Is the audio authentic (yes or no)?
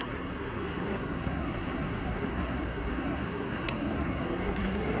no